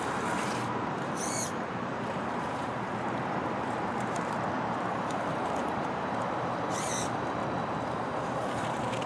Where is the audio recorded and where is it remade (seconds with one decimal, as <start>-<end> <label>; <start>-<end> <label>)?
0.0-7.4 remade; 7.4-8.6 recorded; 8.6-9.1 remade